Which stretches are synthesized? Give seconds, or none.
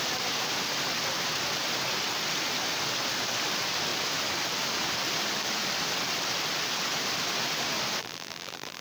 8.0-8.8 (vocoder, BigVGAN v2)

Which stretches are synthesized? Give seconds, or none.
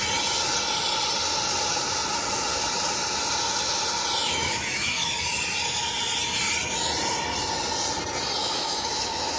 4.2-5.1 (autoencoder, DAC-VAE); 8.4-9.4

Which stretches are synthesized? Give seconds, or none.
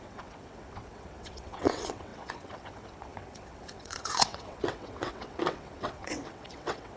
0.0-7.0 (vocoder, WaveNeXt)